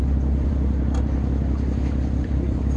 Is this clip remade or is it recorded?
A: remade